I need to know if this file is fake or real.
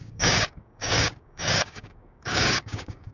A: fake